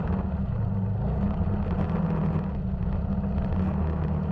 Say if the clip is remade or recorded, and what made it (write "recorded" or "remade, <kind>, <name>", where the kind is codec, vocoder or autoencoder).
recorded